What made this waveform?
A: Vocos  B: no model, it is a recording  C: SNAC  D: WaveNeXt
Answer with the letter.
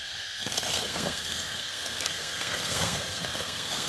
C